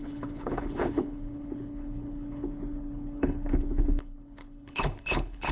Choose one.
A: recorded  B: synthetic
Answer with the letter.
B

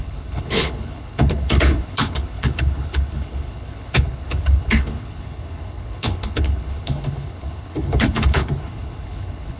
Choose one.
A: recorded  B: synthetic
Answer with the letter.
B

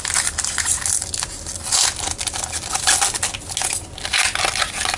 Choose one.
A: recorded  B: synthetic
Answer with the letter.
A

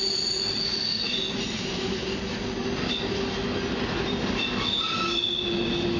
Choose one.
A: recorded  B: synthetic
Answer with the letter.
A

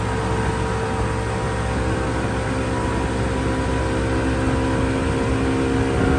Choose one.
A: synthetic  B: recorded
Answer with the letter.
B